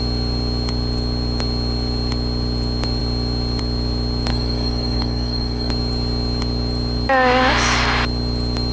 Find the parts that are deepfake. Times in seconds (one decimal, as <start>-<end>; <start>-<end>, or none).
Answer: 4.3-5.7